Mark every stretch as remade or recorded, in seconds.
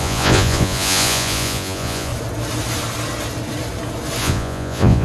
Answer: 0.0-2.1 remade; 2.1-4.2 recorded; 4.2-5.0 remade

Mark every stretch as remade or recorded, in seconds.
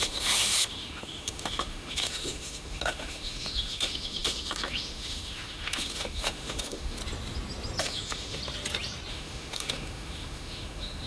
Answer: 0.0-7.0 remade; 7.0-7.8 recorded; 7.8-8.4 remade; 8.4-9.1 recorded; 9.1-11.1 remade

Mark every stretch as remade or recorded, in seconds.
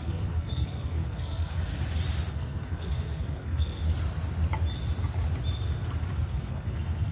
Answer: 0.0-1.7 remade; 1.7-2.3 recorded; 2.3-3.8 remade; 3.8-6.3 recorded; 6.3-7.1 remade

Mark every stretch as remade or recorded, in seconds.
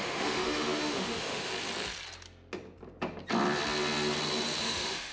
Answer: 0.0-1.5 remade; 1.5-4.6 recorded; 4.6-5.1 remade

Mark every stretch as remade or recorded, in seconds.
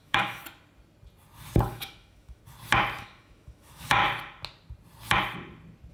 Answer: 0.0-0.4 remade; 0.4-1.7 recorded; 1.7-2.4 remade; 2.4-3.0 recorded; 3.0-4.0 remade; 4.0-5.9 recorded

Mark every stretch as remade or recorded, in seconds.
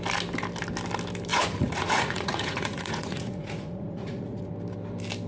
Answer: 0.0-1.3 recorded; 1.3-4.5 remade; 4.5-5.3 recorded